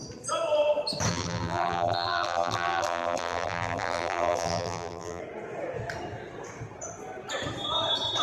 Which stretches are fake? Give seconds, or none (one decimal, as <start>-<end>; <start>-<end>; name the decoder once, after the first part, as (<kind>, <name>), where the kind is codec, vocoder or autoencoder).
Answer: 1.1-5.2 (vocoder, BigVGAN v2)